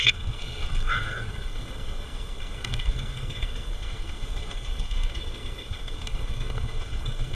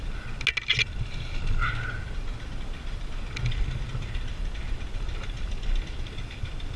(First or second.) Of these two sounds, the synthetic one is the first